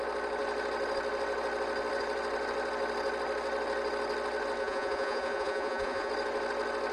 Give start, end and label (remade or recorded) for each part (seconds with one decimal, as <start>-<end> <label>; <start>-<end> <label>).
0.0-4.6 recorded; 4.6-6.1 remade; 6.1-6.9 recorded